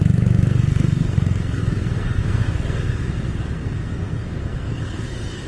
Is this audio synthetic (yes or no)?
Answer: yes